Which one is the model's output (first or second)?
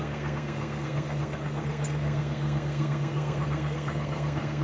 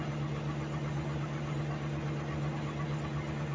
first